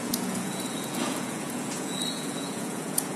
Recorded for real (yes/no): no